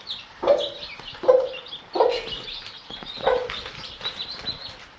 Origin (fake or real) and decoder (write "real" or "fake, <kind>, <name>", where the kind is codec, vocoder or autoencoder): real